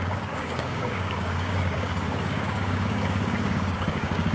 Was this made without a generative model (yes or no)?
no